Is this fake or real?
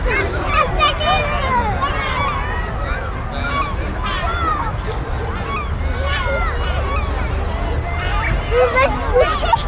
real